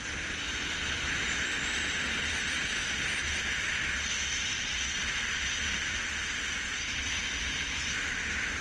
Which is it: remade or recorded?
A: recorded